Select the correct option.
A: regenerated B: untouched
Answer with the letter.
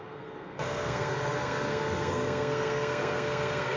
A